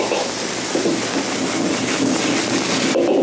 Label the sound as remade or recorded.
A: recorded